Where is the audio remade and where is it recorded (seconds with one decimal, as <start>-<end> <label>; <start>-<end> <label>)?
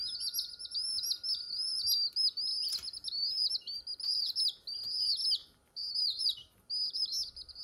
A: 0.0-5.4 recorded; 5.4-6.7 remade; 6.7-7.6 recorded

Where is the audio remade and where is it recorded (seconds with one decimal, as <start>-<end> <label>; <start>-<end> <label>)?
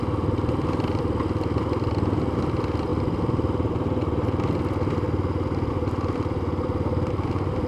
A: 0.0-2.9 remade; 2.9-5.7 recorded; 5.7-7.7 remade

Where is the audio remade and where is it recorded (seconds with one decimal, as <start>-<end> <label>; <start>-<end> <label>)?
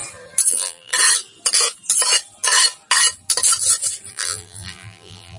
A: 0.0-0.5 recorded; 0.5-0.9 remade; 0.9-4.1 recorded; 4.1-5.4 remade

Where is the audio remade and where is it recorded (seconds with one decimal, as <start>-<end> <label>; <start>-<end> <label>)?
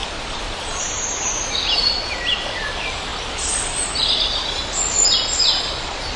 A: 0.0-1.3 remade; 1.3-6.2 recorded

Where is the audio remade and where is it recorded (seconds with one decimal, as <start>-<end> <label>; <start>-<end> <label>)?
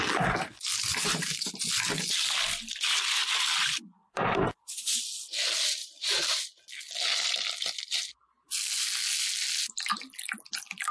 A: 0.0-0.9 recorded; 0.9-1.5 remade; 1.5-4.0 recorded; 4.0-5.0 remade; 5.0-5.8 recorded; 5.8-6.4 remade; 6.4-10.9 recorded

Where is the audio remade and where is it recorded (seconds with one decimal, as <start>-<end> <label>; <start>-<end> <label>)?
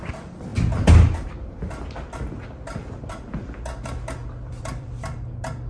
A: 0.0-4.2 recorded; 4.2-5.3 remade; 5.3-5.7 recorded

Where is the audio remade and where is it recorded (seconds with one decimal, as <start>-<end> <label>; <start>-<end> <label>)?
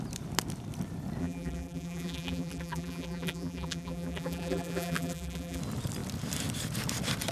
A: 0.0-1.2 recorded; 1.2-5.6 remade; 5.6-7.3 recorded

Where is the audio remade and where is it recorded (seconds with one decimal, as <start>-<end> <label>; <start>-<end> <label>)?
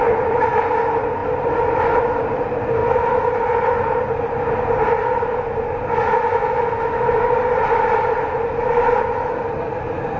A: 0.0-10.2 recorded